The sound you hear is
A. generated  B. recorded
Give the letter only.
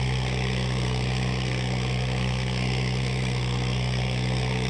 A